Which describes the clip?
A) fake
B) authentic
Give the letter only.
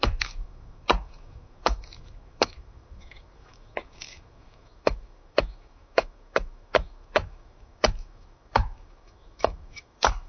A